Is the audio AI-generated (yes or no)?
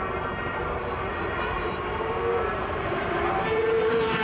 yes